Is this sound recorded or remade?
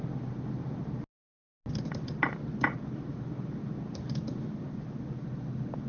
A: recorded